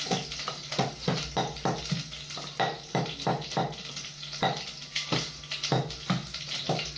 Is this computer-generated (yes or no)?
no